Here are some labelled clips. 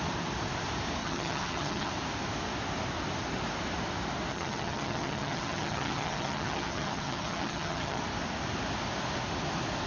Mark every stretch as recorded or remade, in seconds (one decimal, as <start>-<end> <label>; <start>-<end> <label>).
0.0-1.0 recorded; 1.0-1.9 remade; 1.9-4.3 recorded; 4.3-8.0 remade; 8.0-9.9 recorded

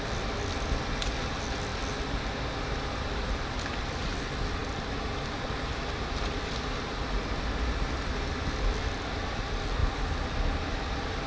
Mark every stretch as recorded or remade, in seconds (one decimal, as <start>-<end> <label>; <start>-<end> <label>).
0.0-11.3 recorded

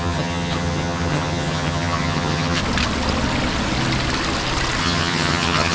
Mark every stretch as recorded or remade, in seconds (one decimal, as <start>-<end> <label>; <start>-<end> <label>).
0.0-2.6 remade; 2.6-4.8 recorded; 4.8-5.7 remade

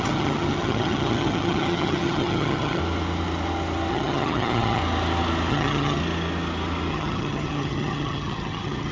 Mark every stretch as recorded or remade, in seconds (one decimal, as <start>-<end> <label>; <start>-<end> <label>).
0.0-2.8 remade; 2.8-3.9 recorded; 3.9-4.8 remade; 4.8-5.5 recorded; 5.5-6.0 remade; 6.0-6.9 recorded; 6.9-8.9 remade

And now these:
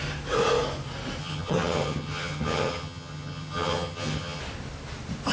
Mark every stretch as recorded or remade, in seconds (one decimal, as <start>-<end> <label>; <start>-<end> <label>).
0.0-1.2 recorded; 1.2-4.4 remade; 4.4-5.3 recorded

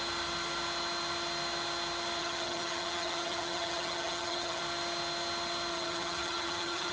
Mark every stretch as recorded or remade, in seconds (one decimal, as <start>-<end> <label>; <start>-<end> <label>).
0.0-2.2 recorded; 2.2-4.6 remade; 4.6-5.7 recorded; 5.7-6.9 remade

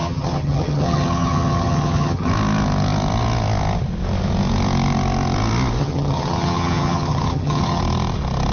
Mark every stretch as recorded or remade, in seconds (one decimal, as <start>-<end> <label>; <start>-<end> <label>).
0.0-2.3 remade; 2.3-5.8 recorded; 5.8-7.8 remade; 7.8-8.5 recorded

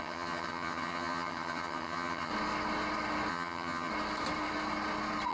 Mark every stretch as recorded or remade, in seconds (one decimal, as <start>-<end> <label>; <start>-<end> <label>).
0.0-2.3 remade; 2.3-3.3 recorded; 3.3-3.9 remade; 3.9-5.3 recorded